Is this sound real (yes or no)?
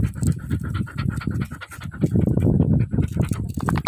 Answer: yes